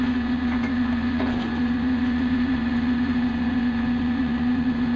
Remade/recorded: remade